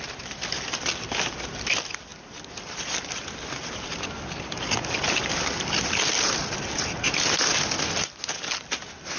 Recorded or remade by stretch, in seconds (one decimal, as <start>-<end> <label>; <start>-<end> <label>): 0.0-9.2 recorded